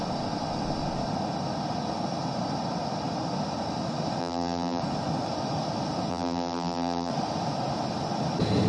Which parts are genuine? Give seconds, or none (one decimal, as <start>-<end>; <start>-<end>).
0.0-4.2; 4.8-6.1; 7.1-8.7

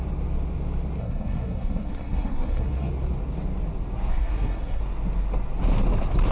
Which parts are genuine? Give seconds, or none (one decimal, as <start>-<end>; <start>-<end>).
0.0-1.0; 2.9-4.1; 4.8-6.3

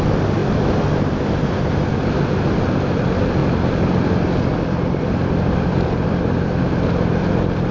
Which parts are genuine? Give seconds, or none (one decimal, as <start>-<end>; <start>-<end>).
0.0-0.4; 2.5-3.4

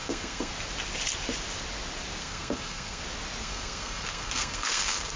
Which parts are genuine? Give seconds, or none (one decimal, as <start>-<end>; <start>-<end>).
0.5-2.2; 3.0-3.4

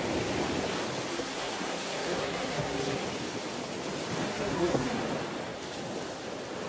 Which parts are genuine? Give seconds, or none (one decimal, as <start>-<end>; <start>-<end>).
0.0-1.1; 3.0-4.3; 5.0-6.7

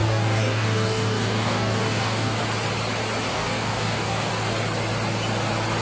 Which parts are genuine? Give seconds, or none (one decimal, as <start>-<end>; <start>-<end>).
2.4-3.3; 4.3-5.8

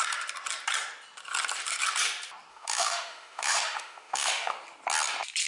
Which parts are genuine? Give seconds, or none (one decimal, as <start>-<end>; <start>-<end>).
0.0-2.5; 4.5-5.5